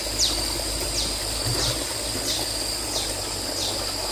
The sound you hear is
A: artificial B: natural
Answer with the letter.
B